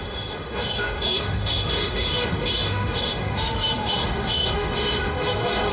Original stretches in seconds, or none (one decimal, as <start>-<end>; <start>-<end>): none